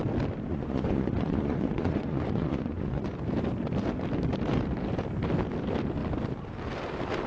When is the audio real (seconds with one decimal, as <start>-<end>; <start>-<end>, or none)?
0.0-0.5; 3.1-7.3